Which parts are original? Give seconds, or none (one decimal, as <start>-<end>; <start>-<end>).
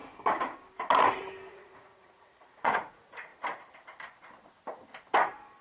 0.0-1.5; 3.3-5.6